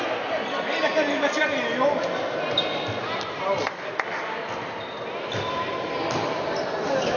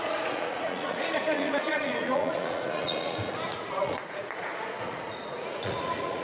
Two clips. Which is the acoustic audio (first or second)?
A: first